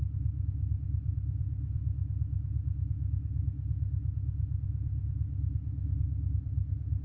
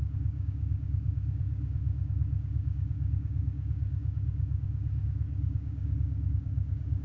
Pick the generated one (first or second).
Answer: second